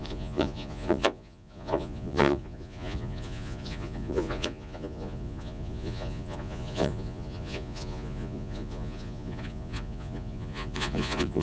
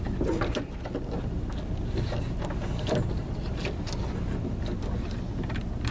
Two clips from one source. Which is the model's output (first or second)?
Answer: first